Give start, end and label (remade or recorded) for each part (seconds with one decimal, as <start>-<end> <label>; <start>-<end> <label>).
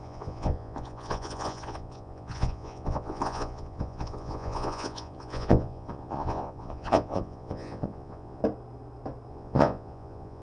0.0-8.4 remade; 8.4-9.3 recorded; 9.3-10.4 remade